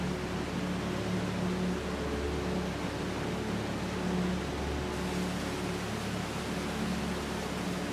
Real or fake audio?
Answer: real